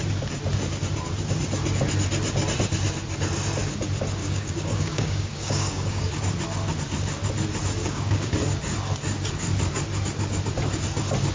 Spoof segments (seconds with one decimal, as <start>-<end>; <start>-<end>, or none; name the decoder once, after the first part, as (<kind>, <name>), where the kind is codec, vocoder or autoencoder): 4.2-6.2 (codec, DAC); 7.8-8.3